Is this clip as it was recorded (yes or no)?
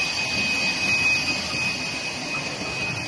yes